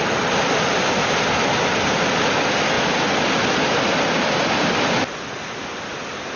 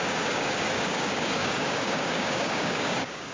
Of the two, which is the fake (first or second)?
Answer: second